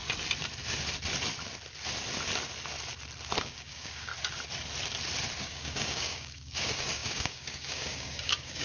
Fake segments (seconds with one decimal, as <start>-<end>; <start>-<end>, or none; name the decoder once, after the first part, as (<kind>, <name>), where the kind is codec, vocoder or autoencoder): 3.4-4.1 (codec, DAC); 5.4-8.6